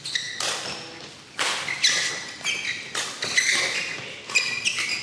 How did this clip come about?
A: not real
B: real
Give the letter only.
B